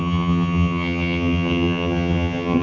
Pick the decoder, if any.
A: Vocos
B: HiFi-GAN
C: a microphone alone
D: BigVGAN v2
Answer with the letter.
B